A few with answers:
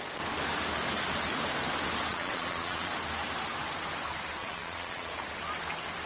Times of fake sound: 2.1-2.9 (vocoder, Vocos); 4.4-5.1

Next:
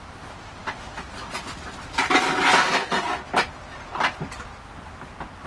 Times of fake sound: none

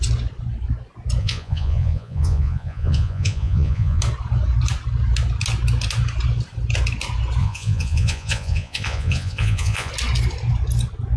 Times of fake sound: 1.2-4.0 (vocoder, Vocos); 7.4-9.9

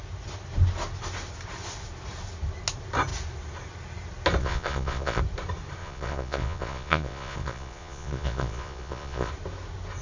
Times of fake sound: 4.4-5.2 (vocoder, Vocos); 5.8-9.3

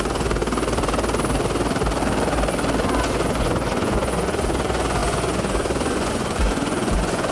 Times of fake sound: 0.0-0.4 (vocoder, Vocos); 2.8-7.3

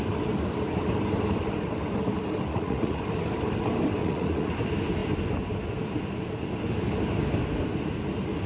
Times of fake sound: 2.5-3.0 (vocoder, Vocos); 4.0-4.5

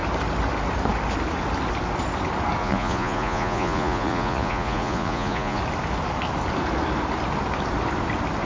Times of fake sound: 2.6-5.6 (vocoder, Vocos)